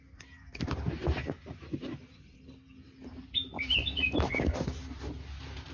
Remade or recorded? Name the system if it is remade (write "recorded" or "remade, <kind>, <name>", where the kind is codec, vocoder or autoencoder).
recorded